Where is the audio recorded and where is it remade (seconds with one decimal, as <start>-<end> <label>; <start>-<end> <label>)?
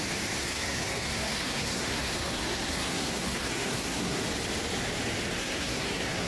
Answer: 0.0-0.4 recorded; 0.4-4.2 remade; 4.2-5.4 recorded; 5.4-6.3 remade